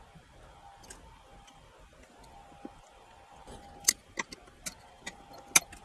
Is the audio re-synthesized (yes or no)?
no